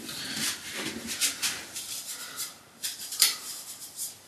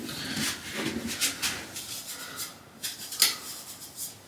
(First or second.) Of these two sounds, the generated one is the first